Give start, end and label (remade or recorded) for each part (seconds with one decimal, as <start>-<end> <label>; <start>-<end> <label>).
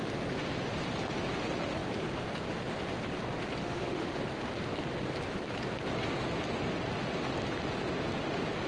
0.0-3.6 recorded; 3.6-4.2 remade; 4.2-8.7 recorded